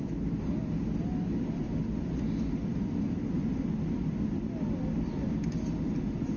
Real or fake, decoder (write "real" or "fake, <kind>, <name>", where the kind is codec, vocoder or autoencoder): real